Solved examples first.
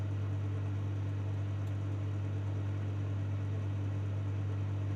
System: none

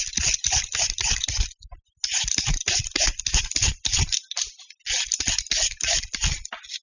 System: none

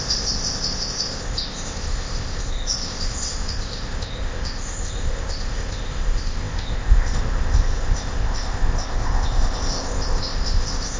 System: codec, ZipCodec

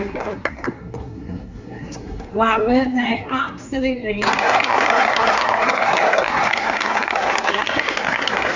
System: codec, SNAC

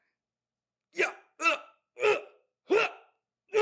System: none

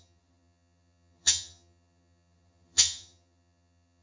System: vocoder, HiFi-GAN